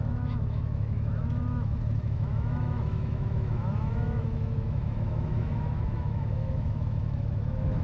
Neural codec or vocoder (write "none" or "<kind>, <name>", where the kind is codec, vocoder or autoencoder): autoencoder, DAC-VAE